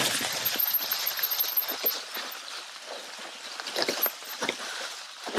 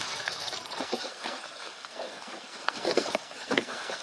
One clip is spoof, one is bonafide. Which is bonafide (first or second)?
first